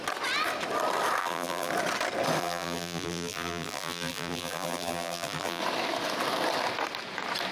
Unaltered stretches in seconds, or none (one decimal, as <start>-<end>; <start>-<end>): 0.0-1.2; 1.7-2.4; 5.6-7.5